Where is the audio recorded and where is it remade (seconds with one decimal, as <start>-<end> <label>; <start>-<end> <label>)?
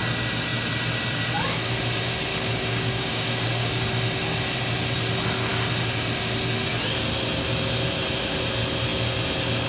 0.0-2.3 recorded; 2.3-3.7 remade; 3.7-9.7 recorded